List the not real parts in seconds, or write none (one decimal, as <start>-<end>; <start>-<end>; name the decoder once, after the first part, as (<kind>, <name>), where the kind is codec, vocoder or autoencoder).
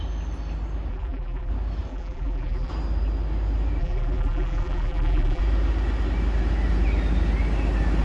0.9-1.5 (vocoder, BigVGAN v2); 1.9-2.7; 3.8-5.4